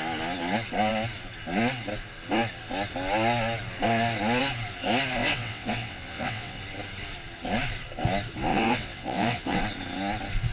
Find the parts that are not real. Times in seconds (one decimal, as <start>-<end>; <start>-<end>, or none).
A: 5.2-6.6; 8.5-9.6